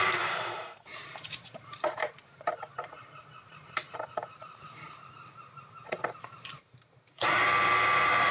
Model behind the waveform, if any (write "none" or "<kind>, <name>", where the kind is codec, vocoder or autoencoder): vocoder, BigVGAN v2